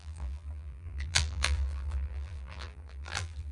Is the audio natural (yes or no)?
no